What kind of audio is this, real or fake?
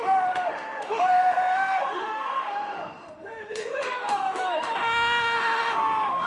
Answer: fake